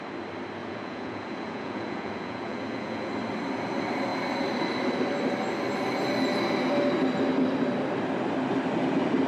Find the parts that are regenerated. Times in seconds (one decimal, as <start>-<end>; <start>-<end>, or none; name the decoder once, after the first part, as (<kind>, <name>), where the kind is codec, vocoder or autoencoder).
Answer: 0.6-3.1 (vocoder, Vocos)